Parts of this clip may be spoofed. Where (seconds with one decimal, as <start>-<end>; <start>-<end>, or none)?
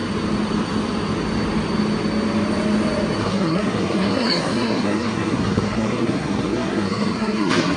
3.2-7.8